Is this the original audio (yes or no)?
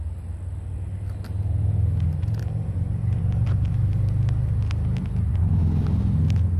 yes